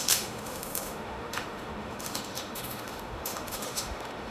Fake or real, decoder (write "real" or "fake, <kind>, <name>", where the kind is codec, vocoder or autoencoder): fake, autoencoder, DAC-VAE